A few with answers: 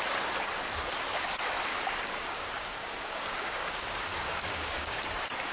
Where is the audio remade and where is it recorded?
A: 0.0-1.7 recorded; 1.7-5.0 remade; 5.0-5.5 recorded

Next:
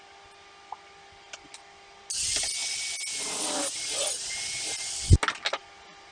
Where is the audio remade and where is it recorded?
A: 0.0-6.1 recorded

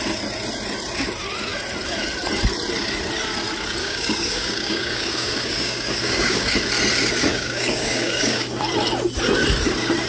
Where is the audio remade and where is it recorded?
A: 0.0-3.8 recorded; 3.8-6.5 remade; 6.5-7.3 recorded; 7.3-8.6 remade; 8.6-10.1 recorded

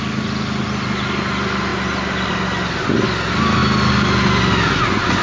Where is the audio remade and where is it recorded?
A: 0.0-5.2 recorded

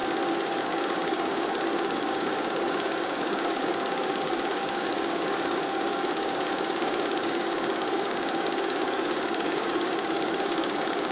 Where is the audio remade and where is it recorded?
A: 0.0-0.6 recorded; 0.6-11.1 remade